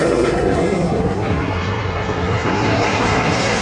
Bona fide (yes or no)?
no